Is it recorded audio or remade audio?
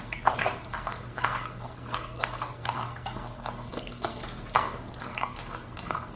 remade